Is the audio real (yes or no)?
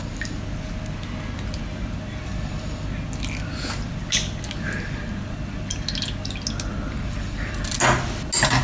yes